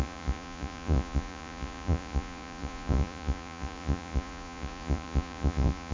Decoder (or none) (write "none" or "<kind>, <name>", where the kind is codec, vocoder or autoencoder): vocoder, Vocos